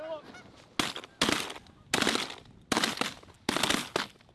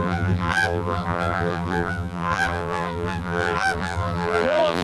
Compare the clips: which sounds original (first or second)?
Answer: first